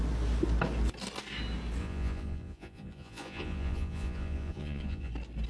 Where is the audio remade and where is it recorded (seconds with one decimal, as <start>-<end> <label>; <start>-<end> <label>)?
0.0-1.8 recorded; 1.8-5.1 remade; 5.1-5.5 recorded